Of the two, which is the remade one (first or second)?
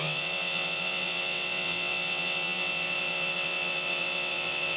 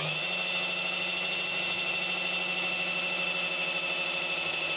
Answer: first